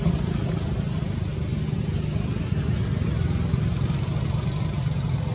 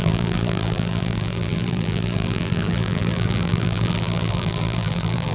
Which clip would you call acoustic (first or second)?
first